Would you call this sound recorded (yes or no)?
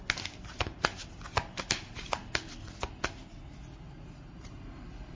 yes